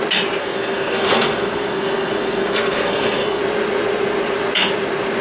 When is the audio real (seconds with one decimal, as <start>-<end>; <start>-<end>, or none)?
0.0-0.4; 3.4-5.2